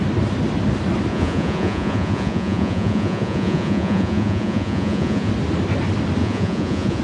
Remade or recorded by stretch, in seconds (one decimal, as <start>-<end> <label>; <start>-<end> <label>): 0.0-1.1 recorded; 1.1-5.3 remade; 5.3-6.2 recorded; 6.2-7.0 remade